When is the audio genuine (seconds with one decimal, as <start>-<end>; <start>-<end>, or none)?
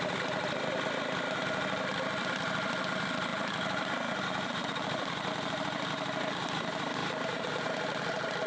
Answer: 0.0-3.3; 5.3-7.0; 7.8-8.5